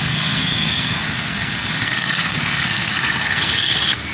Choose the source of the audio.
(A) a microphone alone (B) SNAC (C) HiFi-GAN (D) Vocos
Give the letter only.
B